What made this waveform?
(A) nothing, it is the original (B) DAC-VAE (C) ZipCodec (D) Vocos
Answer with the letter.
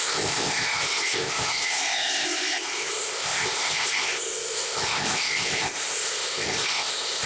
C